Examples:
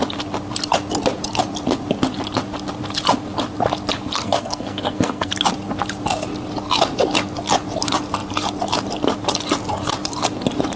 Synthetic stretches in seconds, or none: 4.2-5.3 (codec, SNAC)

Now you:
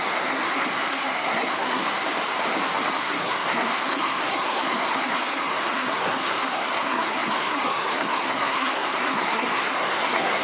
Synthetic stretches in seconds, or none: 0.0-1.8 (codec, SNAC); 2.9-10.4

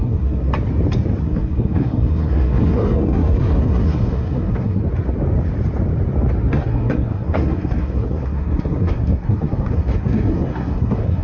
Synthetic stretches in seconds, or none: 0.0-0.5 (codec, SNAC); 1.2-4.8; 6.5-11.2

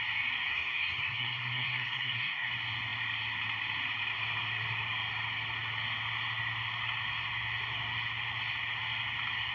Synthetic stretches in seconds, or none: 0.5-2.5 (codec, SNAC)

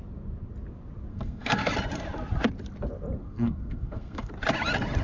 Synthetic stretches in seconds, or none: 1.1-1.7 (codec, SNAC); 3.2-4.3

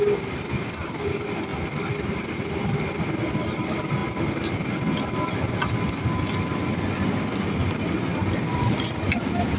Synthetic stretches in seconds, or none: none